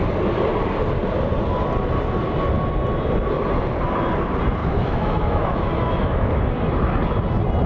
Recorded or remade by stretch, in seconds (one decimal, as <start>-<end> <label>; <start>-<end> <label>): 0.0-4.6 recorded; 4.6-6.5 remade; 6.5-7.7 recorded